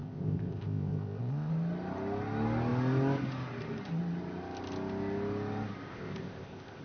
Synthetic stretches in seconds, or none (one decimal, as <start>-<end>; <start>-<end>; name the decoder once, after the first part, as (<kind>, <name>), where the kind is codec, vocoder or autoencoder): 0.0-1.5 (codec, ZipCodec); 5.9-6.8